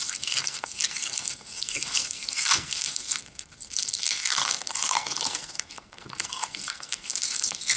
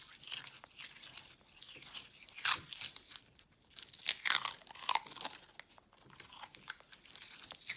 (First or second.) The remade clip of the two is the first